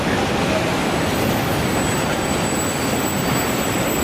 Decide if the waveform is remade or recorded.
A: recorded